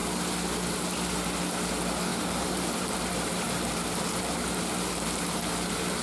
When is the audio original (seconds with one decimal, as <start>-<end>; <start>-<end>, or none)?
0.0-2.1